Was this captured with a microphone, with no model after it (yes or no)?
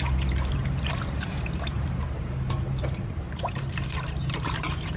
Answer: no